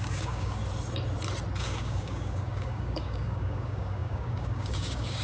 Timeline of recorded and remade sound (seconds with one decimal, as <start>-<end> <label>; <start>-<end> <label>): 0.0-0.6 remade; 0.6-1.6 recorded; 1.6-5.2 remade

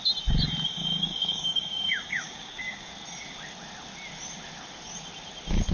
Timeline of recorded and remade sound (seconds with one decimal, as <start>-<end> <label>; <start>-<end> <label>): 0.0-0.7 recorded; 0.7-2.9 remade; 2.9-5.7 recorded

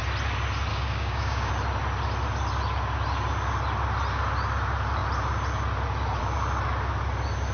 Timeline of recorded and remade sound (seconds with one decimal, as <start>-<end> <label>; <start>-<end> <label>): 0.0-0.7 recorded; 0.7-1.5 remade; 1.5-7.5 recorded